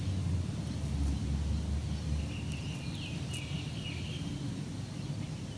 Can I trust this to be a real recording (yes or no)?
yes